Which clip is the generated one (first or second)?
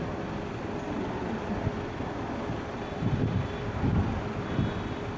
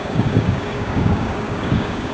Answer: second